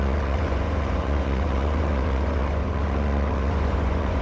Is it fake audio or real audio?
fake